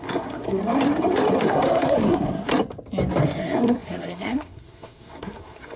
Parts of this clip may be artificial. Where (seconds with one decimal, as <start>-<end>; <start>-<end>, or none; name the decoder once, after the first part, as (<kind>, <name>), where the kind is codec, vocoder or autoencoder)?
0.0-0.6 (codec, SNAC); 1.4-2.5; 3.2-5.8